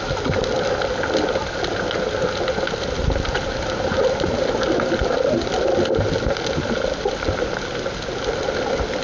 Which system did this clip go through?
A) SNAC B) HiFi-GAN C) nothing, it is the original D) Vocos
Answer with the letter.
C